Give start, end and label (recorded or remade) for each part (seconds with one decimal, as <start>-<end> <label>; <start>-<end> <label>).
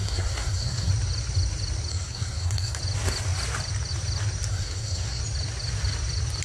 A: 0.0-0.9 remade; 0.9-1.9 recorded; 1.9-2.8 remade; 2.8-4.5 recorded; 4.5-5.2 remade; 5.2-6.4 recorded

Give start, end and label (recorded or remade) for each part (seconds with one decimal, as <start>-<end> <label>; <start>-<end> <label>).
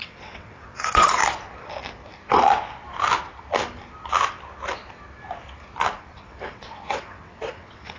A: 0.0-1.2 remade; 1.2-6.0 recorded; 6.0-8.0 remade